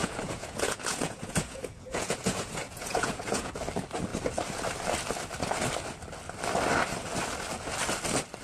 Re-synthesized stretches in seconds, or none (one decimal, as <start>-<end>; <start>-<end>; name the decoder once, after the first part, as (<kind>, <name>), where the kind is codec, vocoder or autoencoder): 0.0-3.5 (vocoder, Vocos)